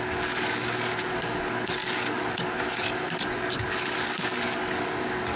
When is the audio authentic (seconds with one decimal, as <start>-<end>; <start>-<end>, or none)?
none

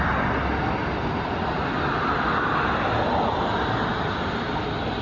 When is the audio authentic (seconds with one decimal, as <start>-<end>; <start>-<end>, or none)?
0.0-5.0

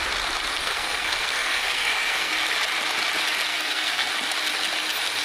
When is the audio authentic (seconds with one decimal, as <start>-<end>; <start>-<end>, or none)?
0.0-0.6; 2.3-3.5; 4.1-5.2

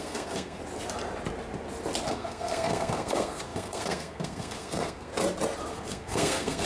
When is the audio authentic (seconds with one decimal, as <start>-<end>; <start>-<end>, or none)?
0.6-2.1; 5.1-5.7

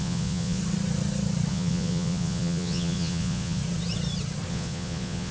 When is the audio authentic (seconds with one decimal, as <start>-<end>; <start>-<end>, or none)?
0.6-1.5; 3.6-4.5